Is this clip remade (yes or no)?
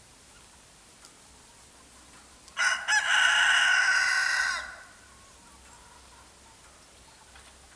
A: no